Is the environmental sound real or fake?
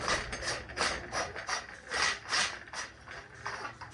real